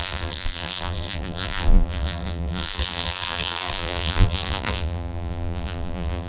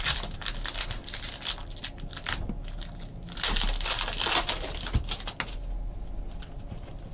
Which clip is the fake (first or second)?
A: first